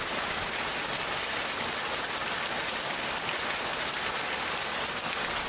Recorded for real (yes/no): yes